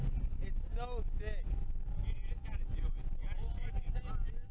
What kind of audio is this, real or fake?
real